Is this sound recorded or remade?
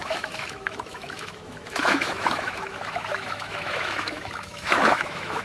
remade